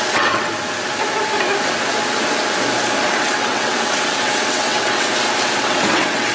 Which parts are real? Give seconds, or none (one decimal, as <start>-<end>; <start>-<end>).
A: 0.5-3.1; 5.1-5.6